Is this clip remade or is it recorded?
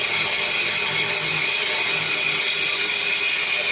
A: recorded